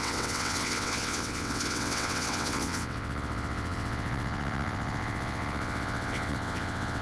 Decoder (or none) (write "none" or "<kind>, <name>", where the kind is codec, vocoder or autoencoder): vocoder, WaveNeXt